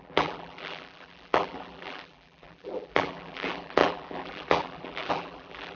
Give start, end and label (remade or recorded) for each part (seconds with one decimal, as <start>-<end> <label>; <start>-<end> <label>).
0.0-5.7 remade